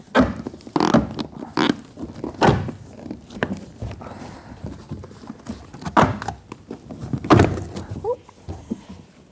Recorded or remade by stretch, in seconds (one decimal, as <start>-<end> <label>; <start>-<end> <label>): 0.0-9.3 recorded